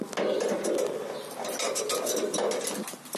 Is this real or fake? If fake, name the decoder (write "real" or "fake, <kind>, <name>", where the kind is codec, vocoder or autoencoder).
real